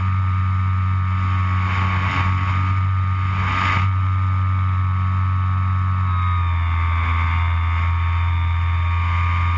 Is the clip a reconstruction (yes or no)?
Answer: no